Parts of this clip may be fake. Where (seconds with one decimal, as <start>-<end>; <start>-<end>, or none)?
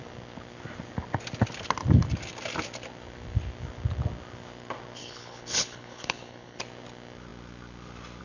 5.0-6.6